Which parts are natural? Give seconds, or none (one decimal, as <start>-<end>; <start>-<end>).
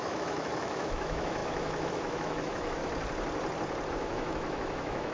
2.8-3.9